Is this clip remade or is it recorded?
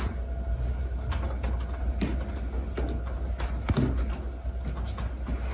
recorded